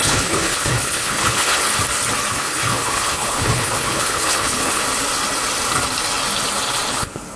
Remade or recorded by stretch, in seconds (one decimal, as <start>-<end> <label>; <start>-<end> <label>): 0.0-1.7 remade; 1.7-2.3 recorded; 2.3-4.8 remade; 4.8-6.9 recorded; 6.9-7.4 remade